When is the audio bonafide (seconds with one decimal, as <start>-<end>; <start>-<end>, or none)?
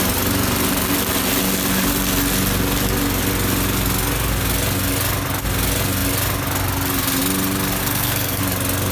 0.0-7.8; 8.4-8.9